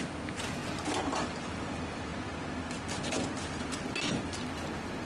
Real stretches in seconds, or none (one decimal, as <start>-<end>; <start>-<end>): 2.1-4.2